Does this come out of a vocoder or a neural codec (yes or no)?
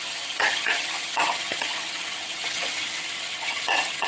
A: yes